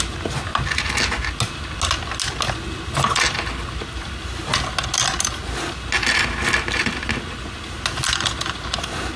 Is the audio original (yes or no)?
yes